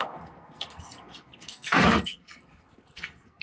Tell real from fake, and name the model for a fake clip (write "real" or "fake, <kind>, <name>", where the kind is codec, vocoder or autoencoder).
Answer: fake, codec, SNAC